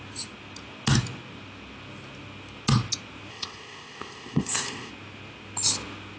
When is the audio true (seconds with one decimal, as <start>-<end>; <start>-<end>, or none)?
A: 0.0-3.3; 4.9-6.2